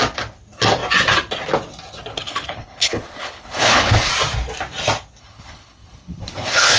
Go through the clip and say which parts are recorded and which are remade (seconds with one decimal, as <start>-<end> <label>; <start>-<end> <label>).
0.0-2.1 recorded; 2.1-4.1 remade; 4.1-5.2 recorded; 5.2-6.8 remade

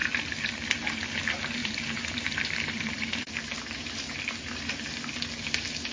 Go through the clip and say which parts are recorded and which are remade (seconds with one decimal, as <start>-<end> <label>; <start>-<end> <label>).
0.0-1.6 recorded; 1.6-5.1 remade; 5.1-5.9 recorded

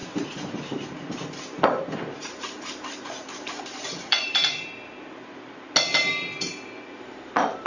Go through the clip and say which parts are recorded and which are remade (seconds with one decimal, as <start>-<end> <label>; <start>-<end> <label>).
0.0-4.4 remade; 4.4-7.0 recorded; 7.0-7.7 remade

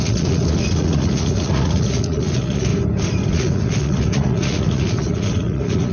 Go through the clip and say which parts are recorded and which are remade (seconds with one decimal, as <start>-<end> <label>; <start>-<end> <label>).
0.0-2.7 remade; 2.7-3.3 recorded; 3.3-5.9 remade

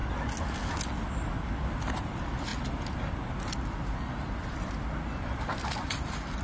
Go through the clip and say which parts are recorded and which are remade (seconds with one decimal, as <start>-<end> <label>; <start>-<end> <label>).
0.0-6.4 recorded

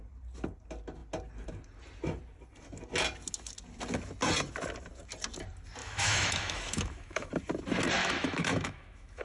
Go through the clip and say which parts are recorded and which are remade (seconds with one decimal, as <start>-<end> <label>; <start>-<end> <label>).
0.0-5.8 recorded; 5.8-7.3 remade; 7.3-8.0 recorded; 8.0-9.2 remade

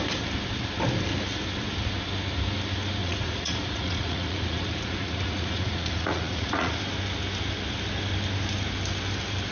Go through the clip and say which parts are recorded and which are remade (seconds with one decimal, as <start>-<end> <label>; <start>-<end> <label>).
0.0-3.0 recorded; 3.0-6.8 remade; 6.8-9.5 recorded

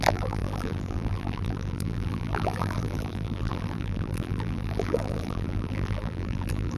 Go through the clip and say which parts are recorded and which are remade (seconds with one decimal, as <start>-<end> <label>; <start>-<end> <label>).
0.0-6.8 remade